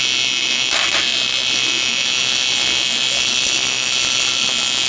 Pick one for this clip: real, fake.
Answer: real